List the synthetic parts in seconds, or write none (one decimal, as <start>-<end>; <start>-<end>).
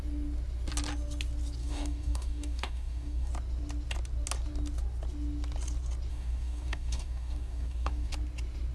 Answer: 1.6-3.3; 6.1-8.1